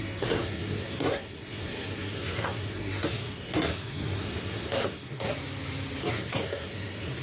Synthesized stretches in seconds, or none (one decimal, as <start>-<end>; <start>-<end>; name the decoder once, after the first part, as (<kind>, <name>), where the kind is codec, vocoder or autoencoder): 0.0-5.3 (codec, SNAC); 6.1-7.2